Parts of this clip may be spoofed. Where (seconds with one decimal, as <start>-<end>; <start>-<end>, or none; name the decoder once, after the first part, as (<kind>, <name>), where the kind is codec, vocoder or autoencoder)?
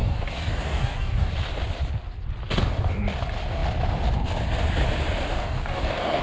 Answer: 0.0-1.3 (codec, DAC); 5.3-6.2